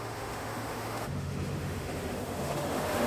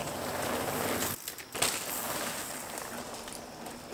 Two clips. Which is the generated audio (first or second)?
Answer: first